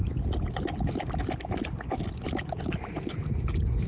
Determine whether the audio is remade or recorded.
recorded